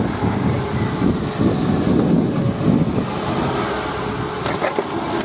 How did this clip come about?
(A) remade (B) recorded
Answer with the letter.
B